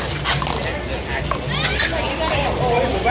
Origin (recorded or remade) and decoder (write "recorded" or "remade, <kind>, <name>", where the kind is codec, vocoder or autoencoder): recorded